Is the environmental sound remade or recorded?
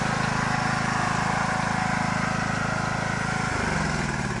recorded